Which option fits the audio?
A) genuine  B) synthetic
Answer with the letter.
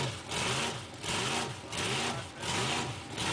A